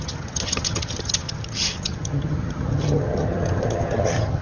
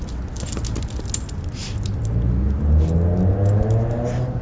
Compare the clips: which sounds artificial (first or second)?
first